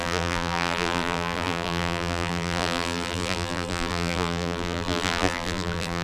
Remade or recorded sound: remade